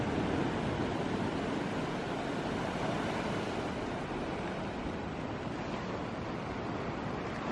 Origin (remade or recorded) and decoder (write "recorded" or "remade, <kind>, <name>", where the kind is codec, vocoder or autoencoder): recorded